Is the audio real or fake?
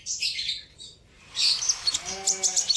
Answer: real